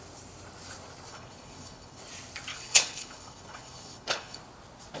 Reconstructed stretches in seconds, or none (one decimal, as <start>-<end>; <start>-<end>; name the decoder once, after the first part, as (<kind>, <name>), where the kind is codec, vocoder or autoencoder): 1.1-2.0 (codec, HILCodec); 2.5-4.4